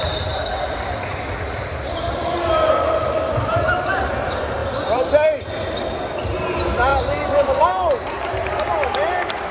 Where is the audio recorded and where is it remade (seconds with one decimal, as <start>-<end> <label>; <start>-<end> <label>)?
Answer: 0.0-9.5 remade